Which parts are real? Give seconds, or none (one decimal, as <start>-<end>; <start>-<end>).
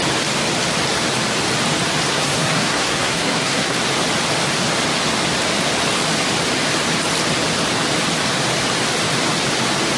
0.0-2.1; 3.8-10.0